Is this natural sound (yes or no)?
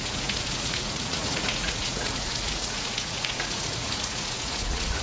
no